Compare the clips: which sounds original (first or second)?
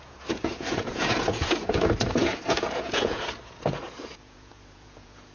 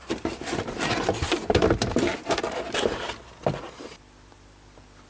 second